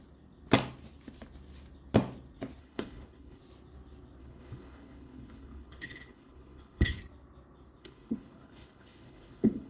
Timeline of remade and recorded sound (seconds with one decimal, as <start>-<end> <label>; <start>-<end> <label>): 0.0-2.6 recorded; 2.6-3.4 remade; 3.4-4.2 recorded; 4.2-7.0 remade; 7.0-7.8 recorded; 7.8-9.7 remade